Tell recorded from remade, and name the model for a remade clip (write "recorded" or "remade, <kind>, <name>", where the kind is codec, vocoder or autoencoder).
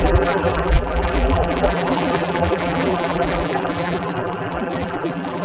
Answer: remade, vocoder, BigVGAN v2